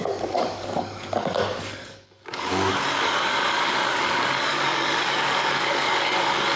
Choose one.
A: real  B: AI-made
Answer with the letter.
B